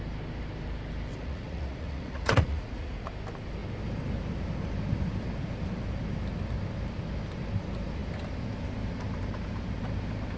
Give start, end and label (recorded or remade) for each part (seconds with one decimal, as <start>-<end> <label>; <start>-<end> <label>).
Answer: 0.0-1.1 recorded; 1.1-3.1 remade; 3.1-10.4 recorded